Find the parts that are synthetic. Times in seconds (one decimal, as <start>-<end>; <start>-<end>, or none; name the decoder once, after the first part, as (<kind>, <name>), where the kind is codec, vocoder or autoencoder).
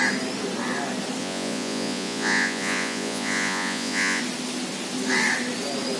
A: 1.2-4.2 (vocoder, Vocos)